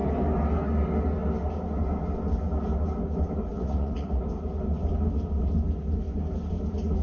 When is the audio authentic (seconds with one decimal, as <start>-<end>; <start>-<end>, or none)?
0.0-3.5; 4.2-7.0